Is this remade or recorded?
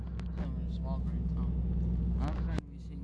recorded